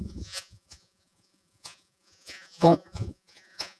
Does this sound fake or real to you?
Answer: fake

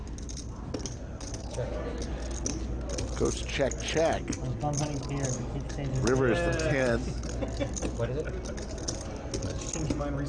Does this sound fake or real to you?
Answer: real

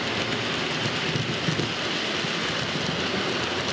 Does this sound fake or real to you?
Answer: real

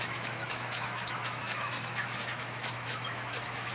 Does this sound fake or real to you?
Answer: fake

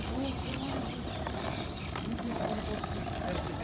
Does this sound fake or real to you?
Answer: fake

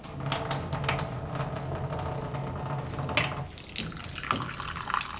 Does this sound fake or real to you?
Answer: real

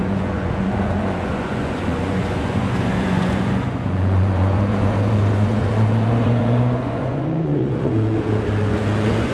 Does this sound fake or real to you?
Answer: fake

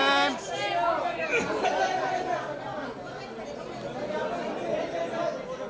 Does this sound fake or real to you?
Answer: real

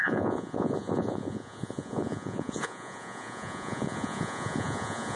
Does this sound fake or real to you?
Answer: fake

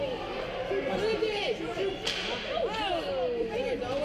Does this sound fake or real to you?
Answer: real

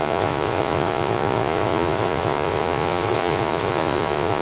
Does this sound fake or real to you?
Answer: fake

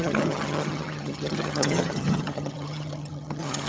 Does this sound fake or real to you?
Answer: fake